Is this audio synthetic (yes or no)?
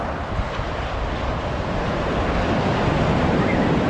no